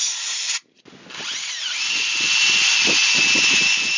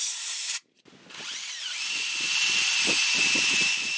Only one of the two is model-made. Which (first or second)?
second